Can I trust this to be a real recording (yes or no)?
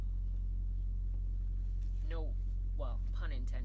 yes